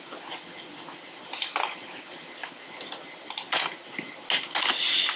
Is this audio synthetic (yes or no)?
no